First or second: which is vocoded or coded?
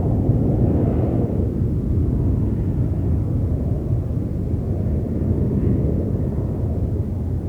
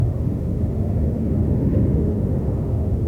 second